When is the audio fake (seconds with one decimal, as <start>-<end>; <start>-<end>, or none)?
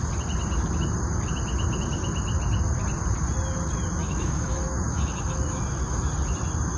4.0-6.1